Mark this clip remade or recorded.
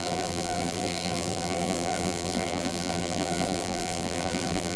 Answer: remade